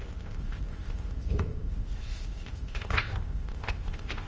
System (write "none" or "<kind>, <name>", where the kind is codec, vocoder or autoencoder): codec, ZipCodec